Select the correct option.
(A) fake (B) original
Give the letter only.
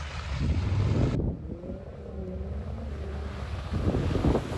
B